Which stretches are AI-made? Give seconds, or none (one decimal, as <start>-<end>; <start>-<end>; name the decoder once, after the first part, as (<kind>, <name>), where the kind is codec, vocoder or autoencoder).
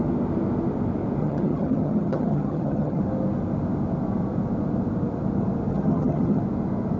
1.2-3.0 (vocoder, HiFi-GAN); 5.7-6.4